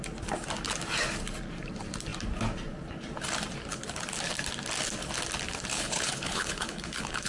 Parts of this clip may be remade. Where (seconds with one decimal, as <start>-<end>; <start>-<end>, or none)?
5.7-7.3